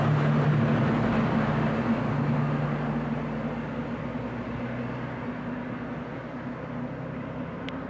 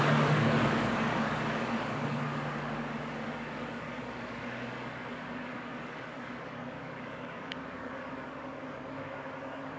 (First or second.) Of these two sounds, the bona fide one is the first